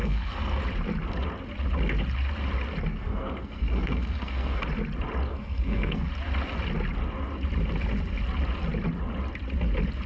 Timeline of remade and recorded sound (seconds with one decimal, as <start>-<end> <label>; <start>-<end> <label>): 0.0-0.6 remade; 0.6-2.9 recorded; 2.9-4.6 remade; 4.6-5.3 recorded; 5.3-6.1 remade; 6.1-10.1 recorded